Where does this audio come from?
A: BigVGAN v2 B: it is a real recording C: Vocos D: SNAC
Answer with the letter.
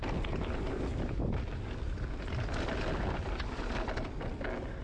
B